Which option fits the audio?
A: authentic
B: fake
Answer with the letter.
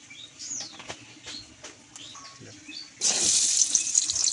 A